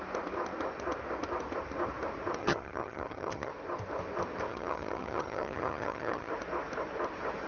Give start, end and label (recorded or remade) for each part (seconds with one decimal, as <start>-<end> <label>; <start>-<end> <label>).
0.0-2.4 recorded; 2.4-3.5 remade; 3.5-4.5 recorded; 4.5-6.3 remade; 6.3-7.5 recorded